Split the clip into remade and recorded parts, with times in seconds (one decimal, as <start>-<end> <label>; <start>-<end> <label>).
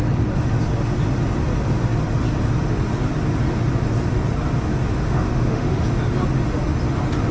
0.0-4.9 recorded; 4.9-5.8 remade; 5.8-7.3 recorded